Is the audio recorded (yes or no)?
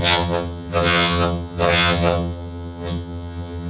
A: no